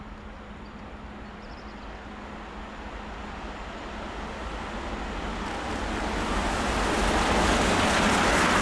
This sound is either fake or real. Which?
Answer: real